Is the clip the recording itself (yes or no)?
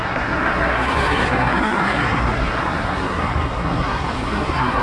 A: no